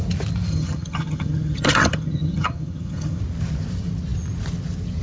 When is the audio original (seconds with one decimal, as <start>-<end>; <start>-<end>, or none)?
0.0-0.5; 3.2-5.0